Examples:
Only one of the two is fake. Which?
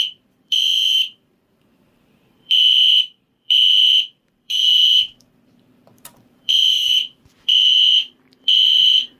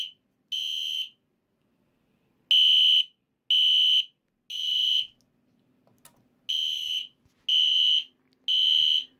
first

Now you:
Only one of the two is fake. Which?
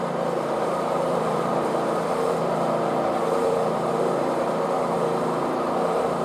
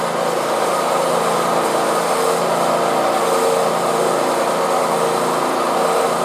first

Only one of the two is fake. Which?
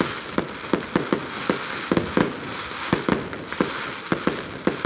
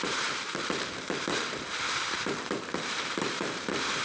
second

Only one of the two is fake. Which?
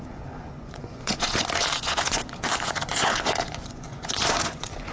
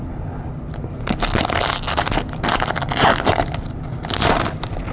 first